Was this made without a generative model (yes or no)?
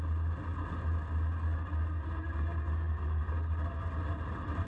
yes